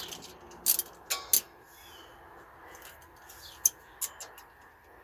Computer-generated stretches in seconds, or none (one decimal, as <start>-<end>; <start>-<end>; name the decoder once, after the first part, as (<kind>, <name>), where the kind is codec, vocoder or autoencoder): none